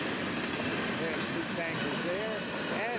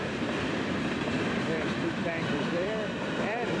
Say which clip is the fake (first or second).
second